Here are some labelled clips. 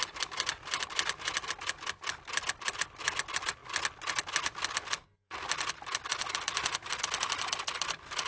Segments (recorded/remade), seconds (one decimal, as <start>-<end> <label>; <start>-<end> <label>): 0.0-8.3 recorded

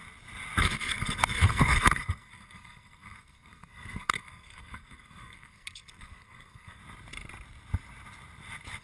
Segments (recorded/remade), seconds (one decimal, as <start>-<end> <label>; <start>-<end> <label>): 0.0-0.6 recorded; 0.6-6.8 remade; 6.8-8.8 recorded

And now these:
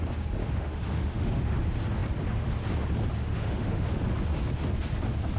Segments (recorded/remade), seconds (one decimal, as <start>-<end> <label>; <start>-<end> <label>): 0.0-0.4 recorded; 0.4-1.6 remade; 1.6-3.2 recorded; 3.2-3.9 remade; 3.9-5.4 recorded

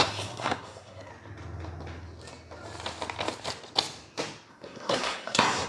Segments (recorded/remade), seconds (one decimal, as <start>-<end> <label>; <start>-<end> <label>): 0.0-1.1 remade; 1.1-4.5 recorded; 4.5-5.7 remade

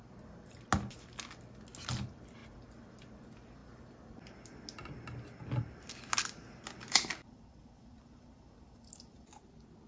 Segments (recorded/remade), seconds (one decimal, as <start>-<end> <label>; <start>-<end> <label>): 0.0-9.9 recorded

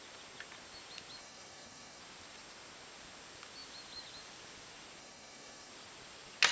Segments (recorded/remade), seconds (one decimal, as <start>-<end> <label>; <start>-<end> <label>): 0.0-1.2 recorded; 1.2-2.0 remade; 2.0-5.0 recorded; 5.0-5.7 remade; 5.7-6.5 recorded

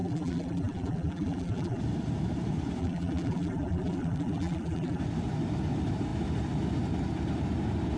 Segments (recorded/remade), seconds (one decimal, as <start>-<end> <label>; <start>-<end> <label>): 0.0-1.8 remade; 1.8-2.8 recorded; 2.8-5.0 remade; 5.0-8.0 recorded